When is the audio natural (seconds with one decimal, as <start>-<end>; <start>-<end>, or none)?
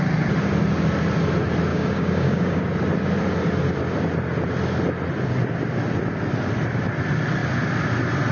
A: 0.0-1.7; 2.6-8.3